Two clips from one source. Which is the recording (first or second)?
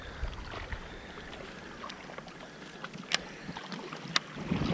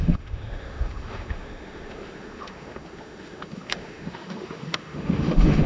first